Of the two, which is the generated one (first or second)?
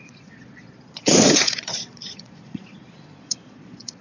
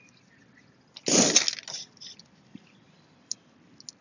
first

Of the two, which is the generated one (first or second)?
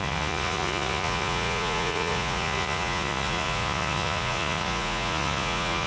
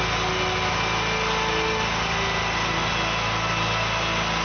first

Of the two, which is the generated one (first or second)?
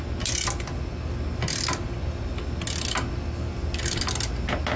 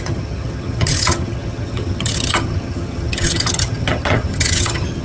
second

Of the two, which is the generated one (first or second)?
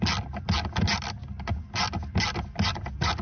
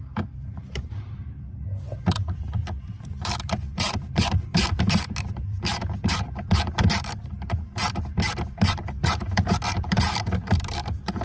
second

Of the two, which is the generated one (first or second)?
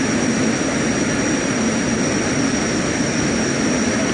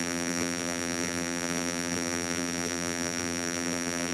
second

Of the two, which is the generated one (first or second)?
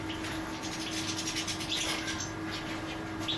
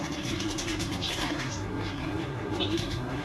second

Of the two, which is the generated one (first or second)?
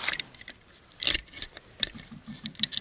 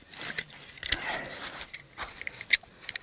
first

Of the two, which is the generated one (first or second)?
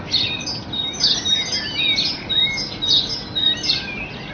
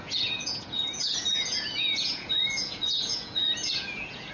second